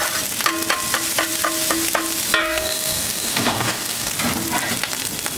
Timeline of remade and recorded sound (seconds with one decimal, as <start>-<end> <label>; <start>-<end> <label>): 0.0-2.4 recorded; 2.4-4.1 remade; 4.1-5.4 recorded